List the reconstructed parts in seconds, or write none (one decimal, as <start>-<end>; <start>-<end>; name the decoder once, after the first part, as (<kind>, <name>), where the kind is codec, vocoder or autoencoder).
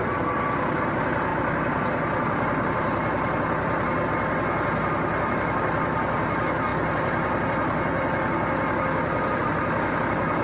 none